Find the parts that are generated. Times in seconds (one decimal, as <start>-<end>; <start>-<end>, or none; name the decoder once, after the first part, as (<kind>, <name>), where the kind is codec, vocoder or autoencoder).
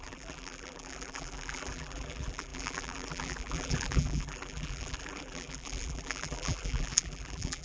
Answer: 0.0-7.6 (vocoder, BigVGAN v2)